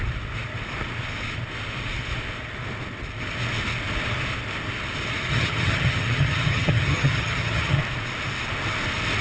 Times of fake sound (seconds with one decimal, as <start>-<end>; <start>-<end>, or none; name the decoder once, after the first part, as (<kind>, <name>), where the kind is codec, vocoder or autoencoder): 5.3-7.8 (vocoder, HiFi-GAN)